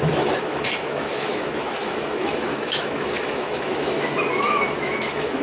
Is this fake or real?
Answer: fake